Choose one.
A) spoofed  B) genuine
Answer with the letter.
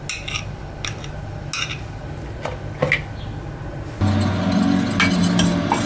B